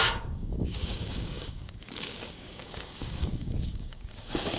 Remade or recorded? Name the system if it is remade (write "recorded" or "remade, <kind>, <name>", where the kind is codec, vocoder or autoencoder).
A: remade, codec, DAC